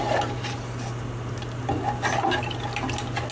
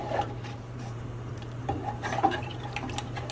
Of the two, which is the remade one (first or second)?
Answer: second